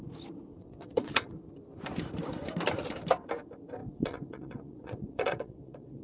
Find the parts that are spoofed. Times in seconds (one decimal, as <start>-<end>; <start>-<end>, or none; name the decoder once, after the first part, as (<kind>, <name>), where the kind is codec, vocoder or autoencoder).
0.5-1.3 (vocoder, WaveNeXt); 3.8-6.0